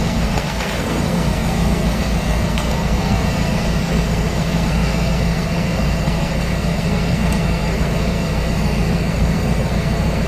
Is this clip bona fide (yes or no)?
no